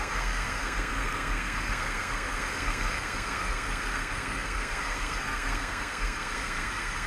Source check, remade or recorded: remade